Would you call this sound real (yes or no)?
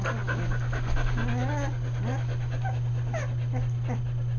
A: yes